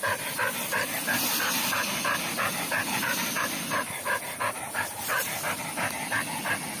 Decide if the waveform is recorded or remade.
recorded